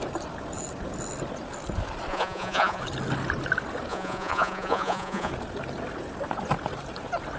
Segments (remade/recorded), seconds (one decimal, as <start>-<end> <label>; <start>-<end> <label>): 0.0-2.1 recorded; 2.1-2.8 remade; 2.8-3.9 recorded; 3.9-5.3 remade; 5.3-7.4 recorded